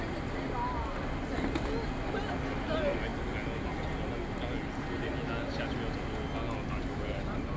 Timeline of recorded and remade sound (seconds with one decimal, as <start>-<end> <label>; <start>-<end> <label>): 0.0-7.6 recorded